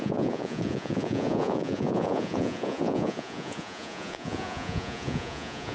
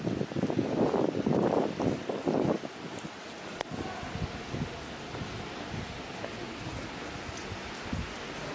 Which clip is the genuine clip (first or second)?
second